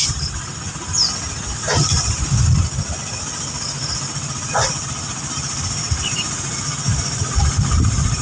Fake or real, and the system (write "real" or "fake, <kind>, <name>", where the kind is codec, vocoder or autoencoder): real